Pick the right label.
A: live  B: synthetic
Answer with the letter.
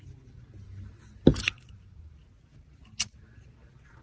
A